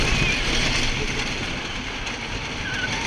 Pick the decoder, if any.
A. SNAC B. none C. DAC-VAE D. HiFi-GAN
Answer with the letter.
B